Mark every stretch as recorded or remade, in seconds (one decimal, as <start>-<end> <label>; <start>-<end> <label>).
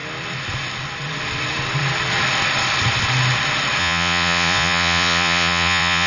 0.0-3.8 recorded; 3.8-6.1 remade